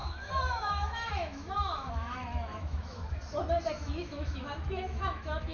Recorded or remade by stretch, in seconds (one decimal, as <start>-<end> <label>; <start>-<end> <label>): 0.0-3.2 remade; 3.2-3.7 recorded; 3.7-5.5 remade